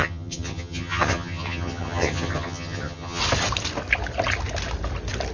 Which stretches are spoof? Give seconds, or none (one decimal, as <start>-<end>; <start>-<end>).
0.0-3.2

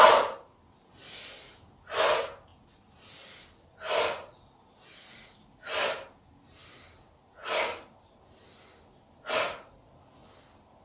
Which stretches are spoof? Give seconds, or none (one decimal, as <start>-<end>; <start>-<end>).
none

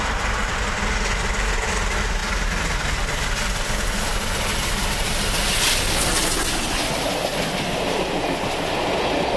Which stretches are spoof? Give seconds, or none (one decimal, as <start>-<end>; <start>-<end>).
none

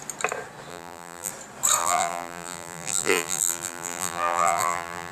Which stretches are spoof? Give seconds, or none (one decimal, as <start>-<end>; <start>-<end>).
0.7-1.3; 1.8-5.1

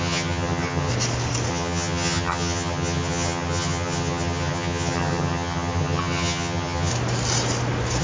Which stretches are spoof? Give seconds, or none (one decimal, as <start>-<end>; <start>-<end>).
0.0-0.9; 1.5-6.9

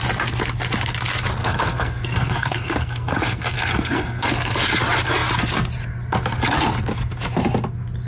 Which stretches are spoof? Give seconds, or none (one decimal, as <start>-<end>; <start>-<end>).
1.4-4.3

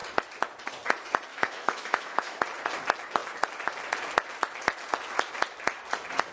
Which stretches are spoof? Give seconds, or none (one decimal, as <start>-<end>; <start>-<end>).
1.3-2.4

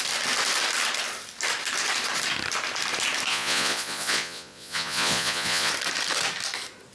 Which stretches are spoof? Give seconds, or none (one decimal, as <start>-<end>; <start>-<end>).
3.3-5.7